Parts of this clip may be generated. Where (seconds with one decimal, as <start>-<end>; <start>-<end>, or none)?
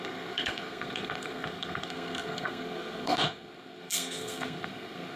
0.0-5.2